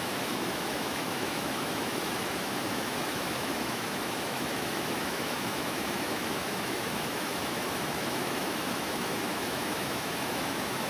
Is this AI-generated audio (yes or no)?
yes